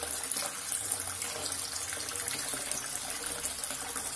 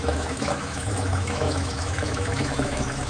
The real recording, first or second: first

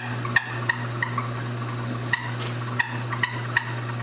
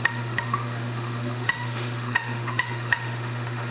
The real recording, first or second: first